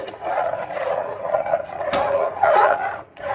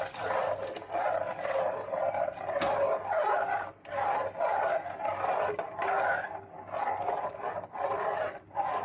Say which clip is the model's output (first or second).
first